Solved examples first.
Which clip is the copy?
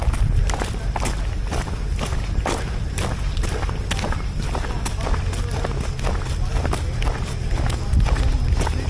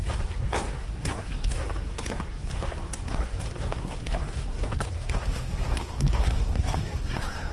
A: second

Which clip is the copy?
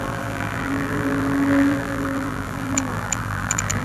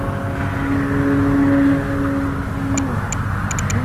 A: first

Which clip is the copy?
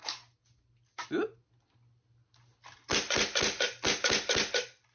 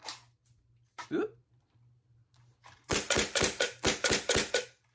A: second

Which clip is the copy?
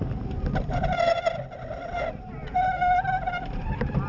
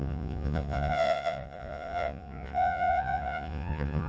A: second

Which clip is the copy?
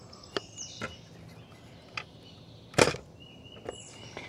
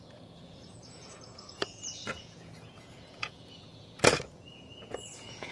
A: second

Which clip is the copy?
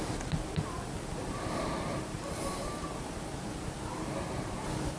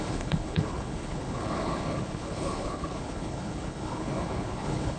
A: second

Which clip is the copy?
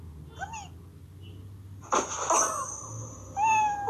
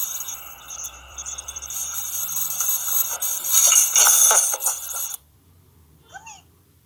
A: second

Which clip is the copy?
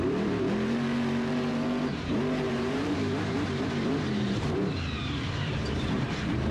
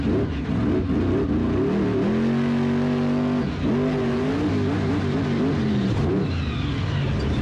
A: first